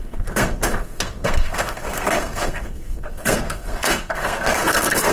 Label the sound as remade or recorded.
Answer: remade